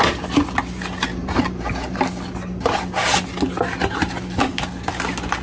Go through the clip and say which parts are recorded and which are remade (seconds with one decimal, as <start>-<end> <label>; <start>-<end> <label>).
0.0-1.1 recorded; 1.1-2.0 remade; 2.0-5.4 recorded